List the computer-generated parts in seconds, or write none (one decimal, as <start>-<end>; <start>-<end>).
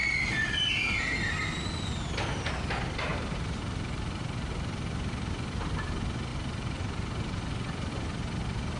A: 3.1-5.3; 6.3-7.9